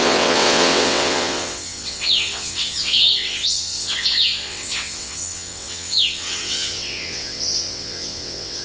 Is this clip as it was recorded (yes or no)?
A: no